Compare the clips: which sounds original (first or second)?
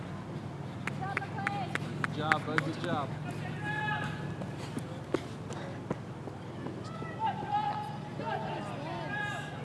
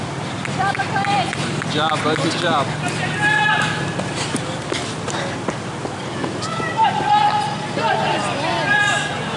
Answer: first